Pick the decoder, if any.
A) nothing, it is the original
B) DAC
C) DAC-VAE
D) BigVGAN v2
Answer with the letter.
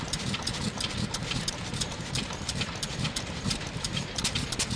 D